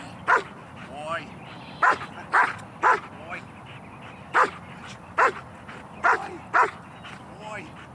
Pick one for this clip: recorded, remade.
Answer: recorded